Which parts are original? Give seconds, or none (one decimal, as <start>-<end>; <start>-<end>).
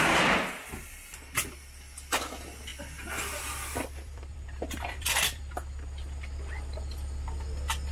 0.0-2.7; 5.4-7.9